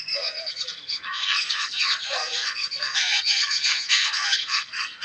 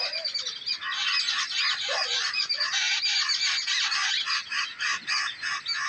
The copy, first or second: first